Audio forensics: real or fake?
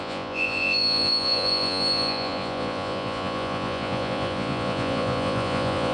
fake